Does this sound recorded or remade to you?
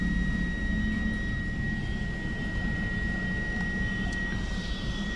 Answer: recorded